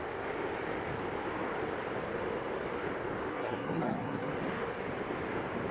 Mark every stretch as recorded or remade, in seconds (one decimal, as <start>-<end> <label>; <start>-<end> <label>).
0.0-3.3 recorded; 3.3-4.3 remade; 4.3-5.7 recorded